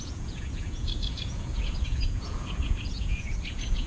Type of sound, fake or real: fake